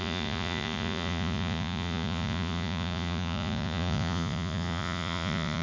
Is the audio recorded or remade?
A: remade